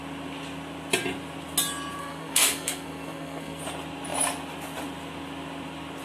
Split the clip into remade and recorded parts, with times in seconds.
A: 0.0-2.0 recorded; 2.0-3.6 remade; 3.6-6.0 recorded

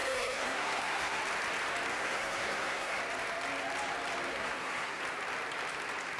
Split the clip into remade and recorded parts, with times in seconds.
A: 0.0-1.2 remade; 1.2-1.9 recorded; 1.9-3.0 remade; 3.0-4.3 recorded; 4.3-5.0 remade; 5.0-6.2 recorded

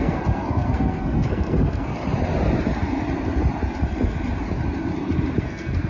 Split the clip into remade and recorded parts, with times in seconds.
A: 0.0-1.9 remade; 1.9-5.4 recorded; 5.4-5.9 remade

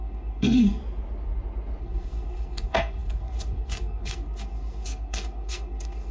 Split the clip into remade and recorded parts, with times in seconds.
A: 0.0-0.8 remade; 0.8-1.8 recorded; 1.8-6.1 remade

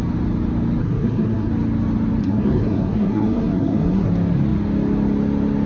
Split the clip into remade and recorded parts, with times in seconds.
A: 0.0-0.8 recorded; 0.8-1.5 remade; 1.5-2.2 recorded; 2.2-4.1 remade; 4.1-5.7 recorded

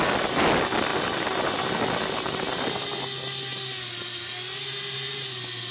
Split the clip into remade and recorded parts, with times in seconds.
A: 0.0-5.7 recorded

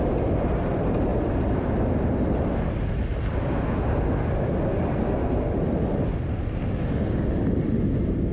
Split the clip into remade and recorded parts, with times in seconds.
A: 0.0-4.9 recorded; 4.9-5.5 remade; 5.5-8.3 recorded